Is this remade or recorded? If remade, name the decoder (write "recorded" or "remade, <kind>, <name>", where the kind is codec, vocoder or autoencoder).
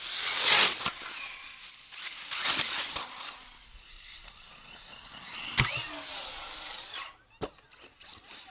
recorded